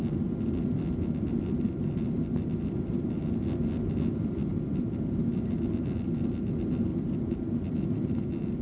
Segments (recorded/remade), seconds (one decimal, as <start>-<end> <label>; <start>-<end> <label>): 0.0-6.9 recorded; 6.9-7.8 remade; 7.8-8.6 recorded